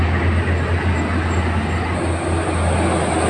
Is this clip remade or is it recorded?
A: recorded